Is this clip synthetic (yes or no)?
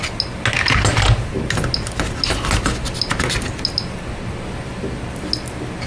no